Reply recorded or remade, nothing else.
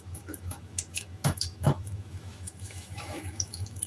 remade